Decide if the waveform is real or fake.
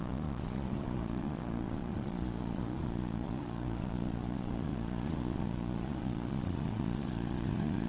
fake